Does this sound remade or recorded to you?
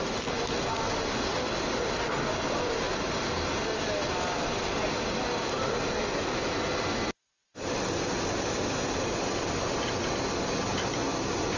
recorded